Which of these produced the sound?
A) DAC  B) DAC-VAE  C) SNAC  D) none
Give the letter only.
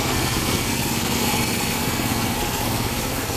C